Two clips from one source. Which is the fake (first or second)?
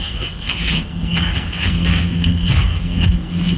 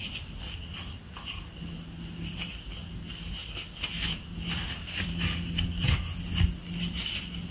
first